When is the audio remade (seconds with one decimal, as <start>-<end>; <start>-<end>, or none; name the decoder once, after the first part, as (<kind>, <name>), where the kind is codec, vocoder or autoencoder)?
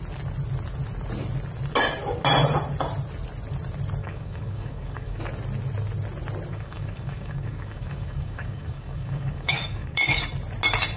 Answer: 4.0-5.2 (codec, DAC); 6.5-10.2